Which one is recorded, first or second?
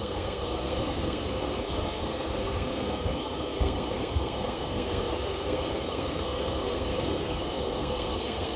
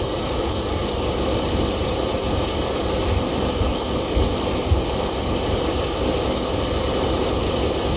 second